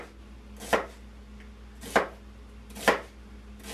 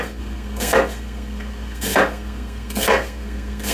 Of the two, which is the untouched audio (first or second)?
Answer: first